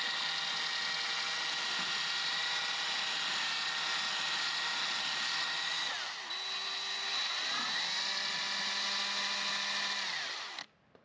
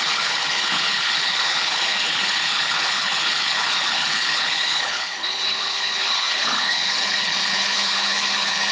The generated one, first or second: second